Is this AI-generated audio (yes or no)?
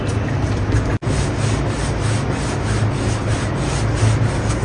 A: no